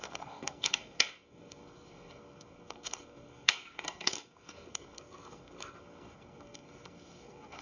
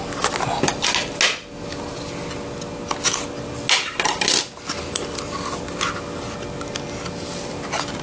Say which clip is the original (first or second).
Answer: second